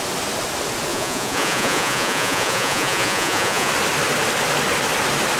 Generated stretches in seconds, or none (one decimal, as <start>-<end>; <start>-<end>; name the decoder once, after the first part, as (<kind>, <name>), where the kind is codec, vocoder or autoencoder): 0.9-3.7 (vocoder, Vocos)

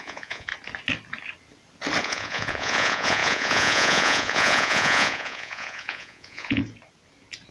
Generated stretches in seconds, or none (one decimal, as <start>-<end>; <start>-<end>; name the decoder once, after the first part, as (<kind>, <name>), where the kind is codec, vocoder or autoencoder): 0.0-0.5 (vocoder, Vocos); 2.0-6.6

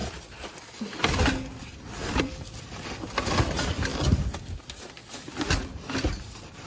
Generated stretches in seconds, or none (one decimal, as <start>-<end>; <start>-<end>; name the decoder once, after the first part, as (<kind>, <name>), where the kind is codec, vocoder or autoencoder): none

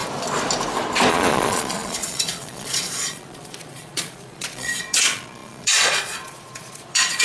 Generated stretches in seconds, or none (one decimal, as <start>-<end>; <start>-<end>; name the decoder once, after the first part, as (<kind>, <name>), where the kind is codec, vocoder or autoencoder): 1.1-7.2 (vocoder, Vocos)